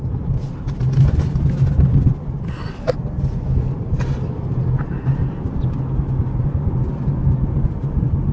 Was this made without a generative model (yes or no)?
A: yes